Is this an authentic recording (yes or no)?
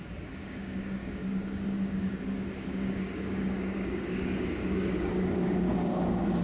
no